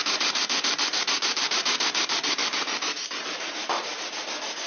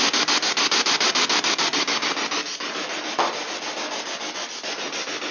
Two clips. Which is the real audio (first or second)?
second